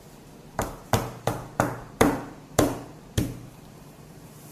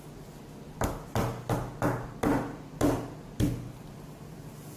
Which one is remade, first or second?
first